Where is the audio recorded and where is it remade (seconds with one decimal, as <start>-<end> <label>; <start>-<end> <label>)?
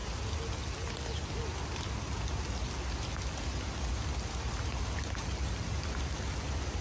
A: 0.0-6.8 recorded